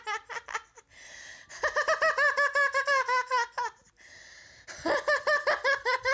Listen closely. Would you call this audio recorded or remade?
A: recorded